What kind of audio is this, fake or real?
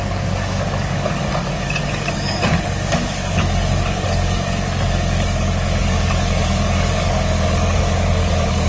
fake